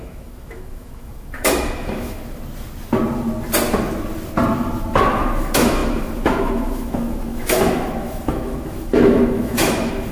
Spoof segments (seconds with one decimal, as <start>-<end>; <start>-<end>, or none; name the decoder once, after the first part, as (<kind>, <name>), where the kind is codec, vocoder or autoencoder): 0.0-2.2 (autoencoder, DAC-VAE); 4.9-10.1